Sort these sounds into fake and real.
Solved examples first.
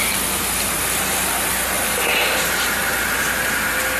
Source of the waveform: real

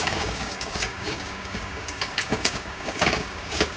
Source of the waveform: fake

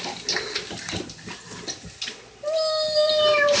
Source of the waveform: real